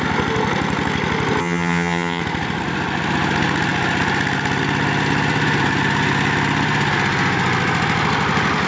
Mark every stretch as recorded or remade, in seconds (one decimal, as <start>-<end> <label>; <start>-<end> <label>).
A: 0.0-1.4 recorded; 1.4-2.2 remade; 2.2-8.7 recorded